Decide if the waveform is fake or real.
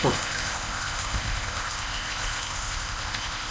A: fake